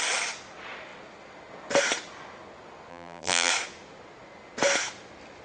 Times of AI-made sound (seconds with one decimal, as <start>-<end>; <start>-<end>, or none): 2.9-3.5